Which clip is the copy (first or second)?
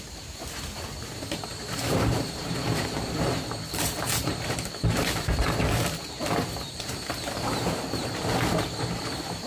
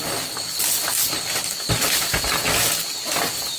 first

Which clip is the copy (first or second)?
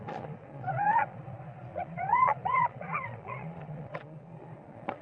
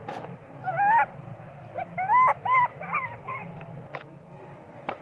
first